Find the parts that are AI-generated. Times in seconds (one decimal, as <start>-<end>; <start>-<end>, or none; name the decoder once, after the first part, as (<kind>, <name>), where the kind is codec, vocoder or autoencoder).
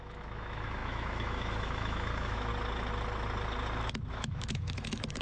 0.0-2.5 (autoencoder, DAC-VAE); 4.1-5.2